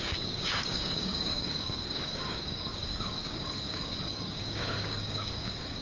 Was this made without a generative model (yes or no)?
no